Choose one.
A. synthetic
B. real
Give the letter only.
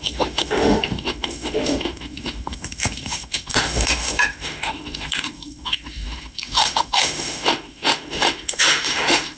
A